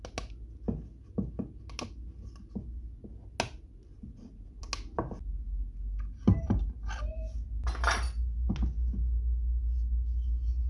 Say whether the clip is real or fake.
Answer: real